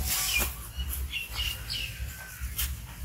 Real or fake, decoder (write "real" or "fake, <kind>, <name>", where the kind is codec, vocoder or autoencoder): real